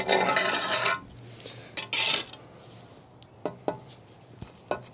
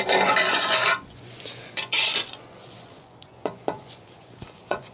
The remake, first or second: second